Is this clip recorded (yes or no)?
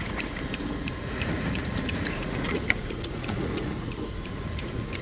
no